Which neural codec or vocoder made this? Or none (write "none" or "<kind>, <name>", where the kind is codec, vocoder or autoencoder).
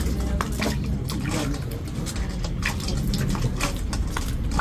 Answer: none